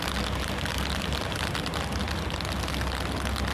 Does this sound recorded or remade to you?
recorded